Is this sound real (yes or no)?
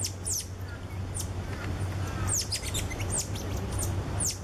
yes